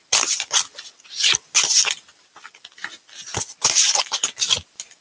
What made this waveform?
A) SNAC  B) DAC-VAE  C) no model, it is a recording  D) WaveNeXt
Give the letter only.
C